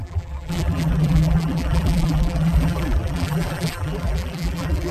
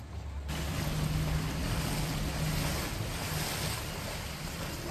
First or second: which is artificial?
first